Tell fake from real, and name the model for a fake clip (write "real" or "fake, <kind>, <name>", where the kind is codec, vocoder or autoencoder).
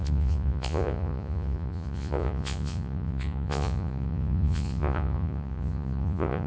fake, vocoder, Vocos